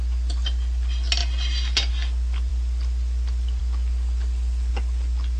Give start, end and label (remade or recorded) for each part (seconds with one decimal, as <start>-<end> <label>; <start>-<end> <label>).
0.0-5.4 recorded